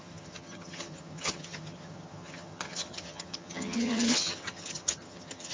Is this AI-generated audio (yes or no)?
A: yes